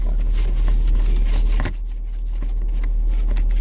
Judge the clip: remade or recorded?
recorded